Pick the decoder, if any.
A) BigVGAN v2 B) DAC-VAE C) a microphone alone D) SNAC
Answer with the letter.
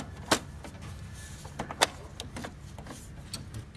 C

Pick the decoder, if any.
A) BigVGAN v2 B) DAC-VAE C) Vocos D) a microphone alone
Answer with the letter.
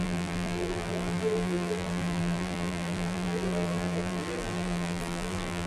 A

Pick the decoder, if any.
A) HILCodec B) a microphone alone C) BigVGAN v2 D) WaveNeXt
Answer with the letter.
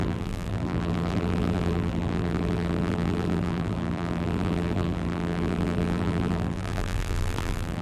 C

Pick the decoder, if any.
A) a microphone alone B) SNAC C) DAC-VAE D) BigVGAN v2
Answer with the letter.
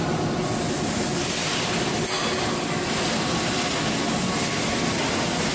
A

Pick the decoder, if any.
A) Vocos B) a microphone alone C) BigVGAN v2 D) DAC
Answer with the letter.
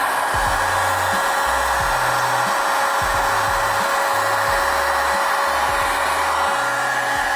B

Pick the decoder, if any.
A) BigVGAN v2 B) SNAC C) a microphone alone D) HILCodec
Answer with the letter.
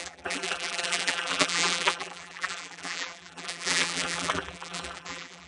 A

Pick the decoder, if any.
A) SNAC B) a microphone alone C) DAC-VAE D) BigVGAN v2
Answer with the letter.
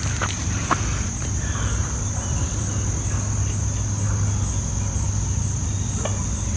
B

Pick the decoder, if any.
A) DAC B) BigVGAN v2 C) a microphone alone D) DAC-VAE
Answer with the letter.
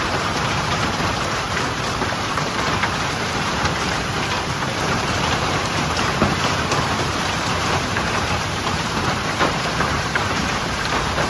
B